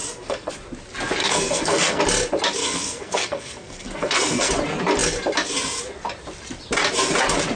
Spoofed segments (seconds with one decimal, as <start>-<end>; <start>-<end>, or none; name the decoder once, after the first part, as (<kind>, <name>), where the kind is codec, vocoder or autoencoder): 0.0-0.5 (codec, SNAC); 1.2-2.0; 2.6-4.5